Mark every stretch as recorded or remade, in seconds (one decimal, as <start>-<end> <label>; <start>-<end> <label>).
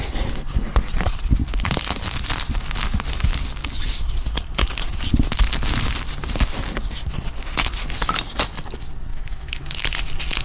0.0-9.1 recorded; 9.1-9.6 remade; 9.6-10.4 recorded